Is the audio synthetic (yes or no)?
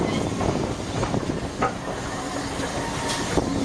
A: no